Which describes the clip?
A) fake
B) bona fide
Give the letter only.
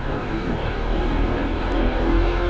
A